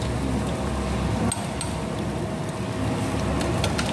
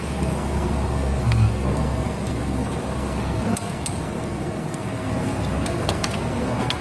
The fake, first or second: second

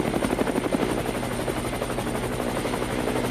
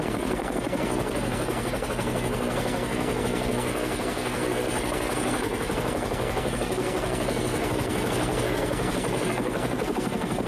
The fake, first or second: second